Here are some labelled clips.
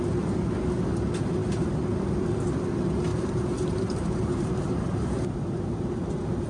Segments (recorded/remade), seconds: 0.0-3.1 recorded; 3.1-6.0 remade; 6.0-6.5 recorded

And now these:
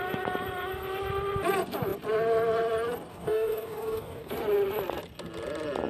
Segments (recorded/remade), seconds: 0.0-3.1 recorded; 3.1-4.3 remade; 4.3-5.9 recorded

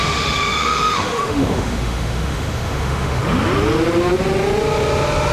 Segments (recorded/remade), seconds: 0.0-3.2 remade; 3.2-5.3 recorded

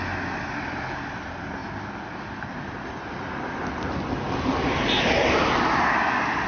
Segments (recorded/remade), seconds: 0.0-6.5 recorded